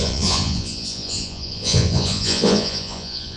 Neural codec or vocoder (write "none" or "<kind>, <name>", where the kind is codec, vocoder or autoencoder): vocoder, Vocos